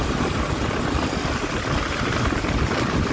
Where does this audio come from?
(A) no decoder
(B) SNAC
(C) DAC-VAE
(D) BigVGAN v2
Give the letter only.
A